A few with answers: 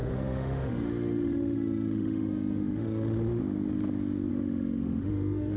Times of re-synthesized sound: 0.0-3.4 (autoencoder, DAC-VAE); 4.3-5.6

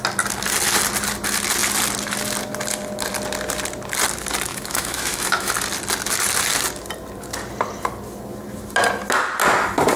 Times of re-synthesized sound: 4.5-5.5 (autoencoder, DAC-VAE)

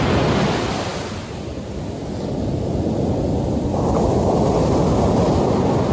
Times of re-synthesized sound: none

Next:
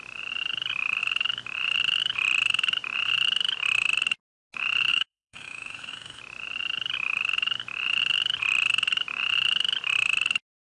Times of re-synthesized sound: 4.9-6.2 (autoencoder, DAC-VAE)

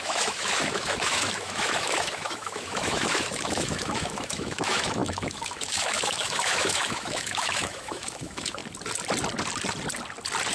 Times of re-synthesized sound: 0.0-8.6 (autoencoder, DAC-VAE)

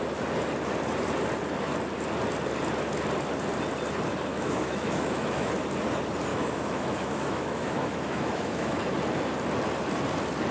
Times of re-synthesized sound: 4.3-5.5 (autoencoder, DAC-VAE); 6.3-8.8